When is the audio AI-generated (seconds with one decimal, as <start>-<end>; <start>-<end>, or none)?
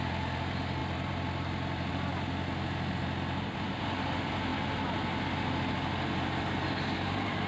0.8-1.9